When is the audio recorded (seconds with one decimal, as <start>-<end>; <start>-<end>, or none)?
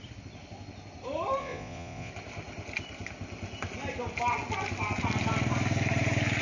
0.0-1.4; 2.1-6.4